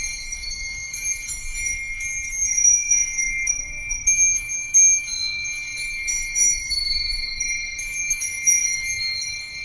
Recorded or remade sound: remade